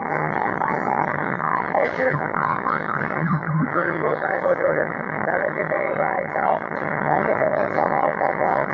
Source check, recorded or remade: remade